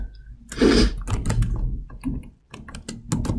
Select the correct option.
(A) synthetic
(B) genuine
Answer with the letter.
B